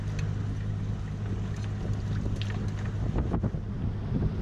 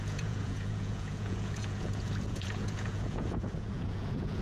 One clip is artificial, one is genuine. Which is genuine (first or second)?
first